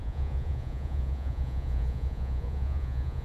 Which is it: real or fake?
fake